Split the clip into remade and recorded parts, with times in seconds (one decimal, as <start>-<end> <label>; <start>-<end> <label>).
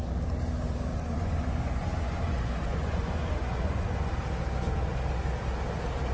0.0-0.9 recorded; 0.9-4.1 remade; 4.1-6.1 recorded